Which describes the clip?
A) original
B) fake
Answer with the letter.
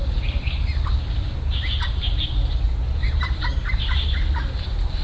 A